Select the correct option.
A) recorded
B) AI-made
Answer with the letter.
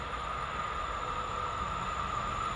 A